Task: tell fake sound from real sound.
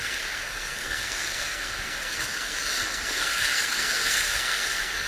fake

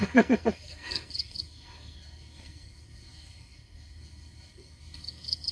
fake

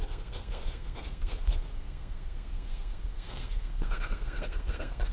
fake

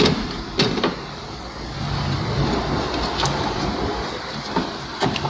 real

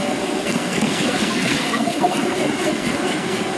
fake